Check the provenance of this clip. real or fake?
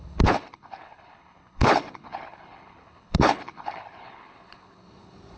fake